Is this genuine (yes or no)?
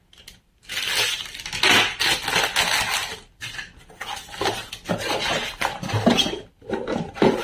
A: yes